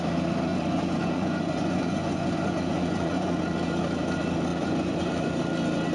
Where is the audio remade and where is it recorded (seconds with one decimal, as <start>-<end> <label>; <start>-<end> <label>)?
0.0-0.5 recorded; 0.5-3.4 remade; 3.4-4.5 recorded; 4.5-5.3 remade; 5.3-5.9 recorded